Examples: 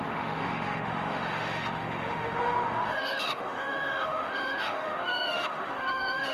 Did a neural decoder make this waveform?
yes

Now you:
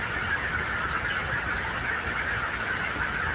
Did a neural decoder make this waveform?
no